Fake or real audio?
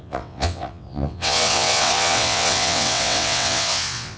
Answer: fake